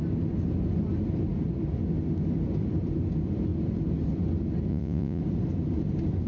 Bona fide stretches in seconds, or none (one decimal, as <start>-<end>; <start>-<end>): 0.0-4.7; 5.2-6.3